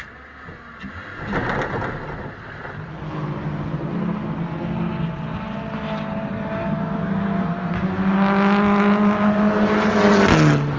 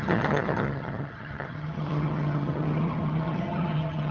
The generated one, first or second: second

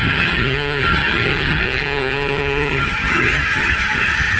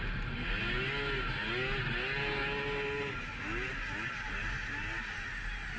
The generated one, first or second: first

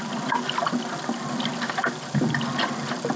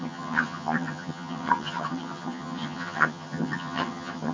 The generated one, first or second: second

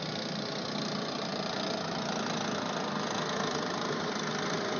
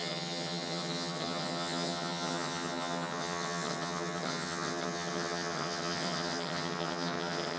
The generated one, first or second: second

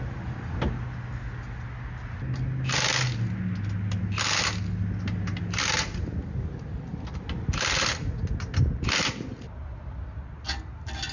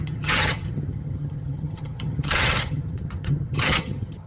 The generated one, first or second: second